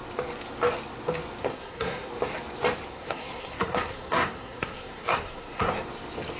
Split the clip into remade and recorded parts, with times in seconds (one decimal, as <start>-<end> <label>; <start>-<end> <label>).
0.0-1.4 recorded; 1.4-2.1 remade; 2.1-2.9 recorded; 2.9-5.7 remade; 5.7-6.4 recorded